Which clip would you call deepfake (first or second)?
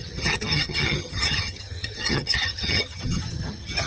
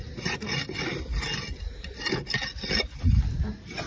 first